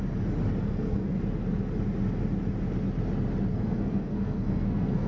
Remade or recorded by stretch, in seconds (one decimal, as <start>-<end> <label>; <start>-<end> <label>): 0.0-0.6 recorded; 0.6-1.2 remade; 1.2-3.5 recorded; 3.5-5.1 remade